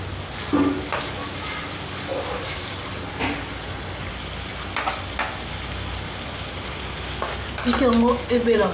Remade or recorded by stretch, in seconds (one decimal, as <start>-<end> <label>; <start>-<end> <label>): 0.0-8.7 recorded

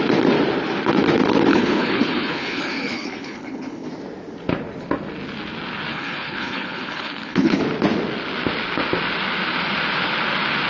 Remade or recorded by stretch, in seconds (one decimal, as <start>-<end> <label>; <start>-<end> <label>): 0.0-1.5 recorded; 1.5-3.9 remade; 3.9-5.9 recorded; 5.9-7.6 remade; 7.6-10.7 recorded

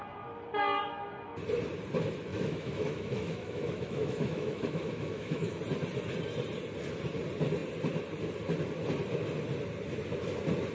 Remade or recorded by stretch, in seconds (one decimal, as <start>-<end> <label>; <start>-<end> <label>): 0.0-2.3 recorded; 2.3-5.6 remade; 5.6-10.7 recorded

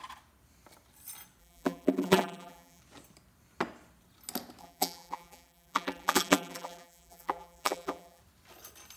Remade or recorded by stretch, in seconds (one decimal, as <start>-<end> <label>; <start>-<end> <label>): 0.0-1.4 recorded; 1.4-2.8 remade; 2.8-4.6 recorded; 4.6-8.2 remade; 8.2-9.0 recorded

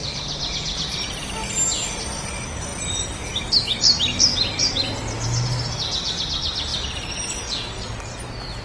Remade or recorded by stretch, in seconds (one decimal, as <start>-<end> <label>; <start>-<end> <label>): 0.0-1.2 remade; 1.2-4.3 recorded; 4.3-5.0 remade; 5.0-8.6 recorded

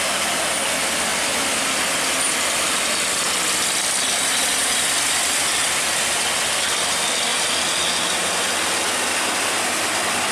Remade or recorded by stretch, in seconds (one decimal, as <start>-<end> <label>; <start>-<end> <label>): 0.0-10.3 recorded